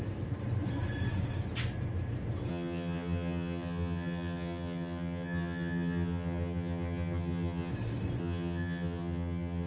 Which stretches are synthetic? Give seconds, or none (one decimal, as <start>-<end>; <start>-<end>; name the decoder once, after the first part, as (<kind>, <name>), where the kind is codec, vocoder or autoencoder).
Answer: 2.5-7.7 (vocoder, HiFi-GAN); 8.2-9.7